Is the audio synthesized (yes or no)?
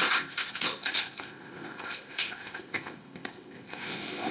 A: yes